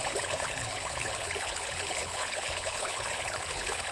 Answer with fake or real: fake